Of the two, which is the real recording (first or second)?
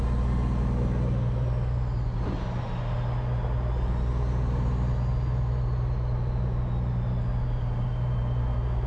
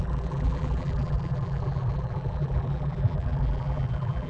first